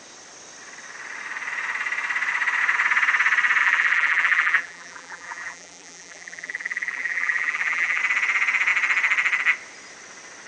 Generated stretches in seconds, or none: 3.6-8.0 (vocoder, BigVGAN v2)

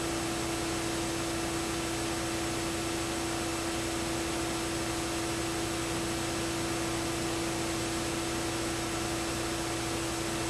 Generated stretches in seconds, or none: none

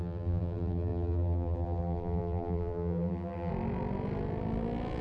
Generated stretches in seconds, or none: 0.0-3.5 (vocoder, BigVGAN v2)